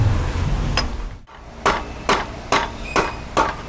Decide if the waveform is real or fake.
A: real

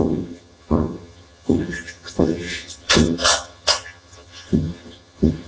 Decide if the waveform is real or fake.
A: fake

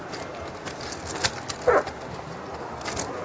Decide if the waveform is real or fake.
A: real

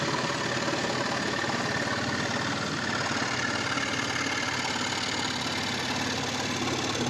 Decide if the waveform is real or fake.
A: real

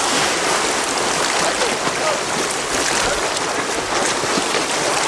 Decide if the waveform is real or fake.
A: real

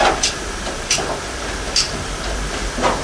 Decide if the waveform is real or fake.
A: real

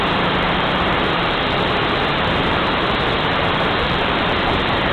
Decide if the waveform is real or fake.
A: fake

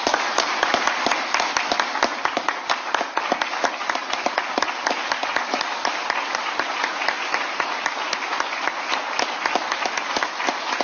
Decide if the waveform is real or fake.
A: real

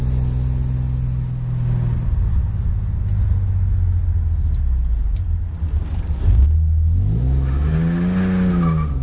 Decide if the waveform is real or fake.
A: real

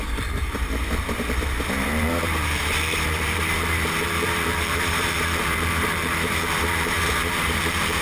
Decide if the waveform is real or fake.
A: fake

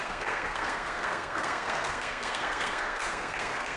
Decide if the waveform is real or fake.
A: fake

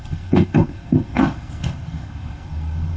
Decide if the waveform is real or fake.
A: fake